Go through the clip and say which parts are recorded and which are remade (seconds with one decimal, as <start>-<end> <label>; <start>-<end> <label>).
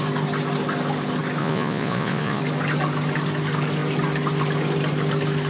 0.0-1.4 recorded; 1.4-2.4 remade; 2.4-5.5 recorded